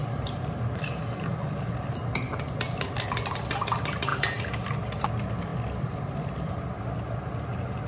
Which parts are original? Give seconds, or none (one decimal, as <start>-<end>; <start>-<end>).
0.9-5.5